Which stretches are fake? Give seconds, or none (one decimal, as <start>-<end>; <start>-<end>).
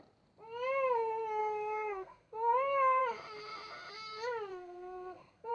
1.4-3.0; 4.5-5.5